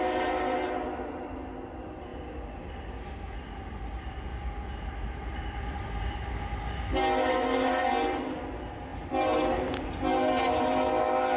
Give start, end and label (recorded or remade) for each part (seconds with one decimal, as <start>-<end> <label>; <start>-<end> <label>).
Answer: 0.0-11.4 recorded